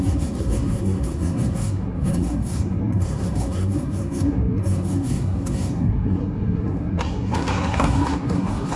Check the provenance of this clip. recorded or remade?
remade